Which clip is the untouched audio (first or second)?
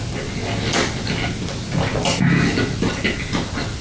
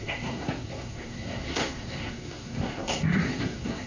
first